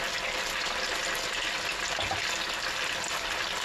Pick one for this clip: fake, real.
real